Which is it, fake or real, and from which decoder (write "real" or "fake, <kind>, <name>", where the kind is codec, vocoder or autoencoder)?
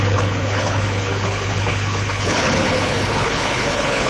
fake, codec, HILCodec